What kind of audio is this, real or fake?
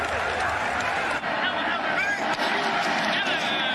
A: real